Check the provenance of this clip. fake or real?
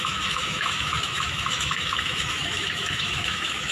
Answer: fake